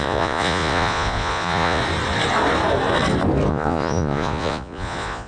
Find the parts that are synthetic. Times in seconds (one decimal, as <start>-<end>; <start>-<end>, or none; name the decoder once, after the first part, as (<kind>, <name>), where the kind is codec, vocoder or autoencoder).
0.0-1.8 (vocoder, Vocos); 3.5-5.3